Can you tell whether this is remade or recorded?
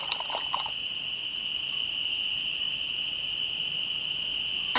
recorded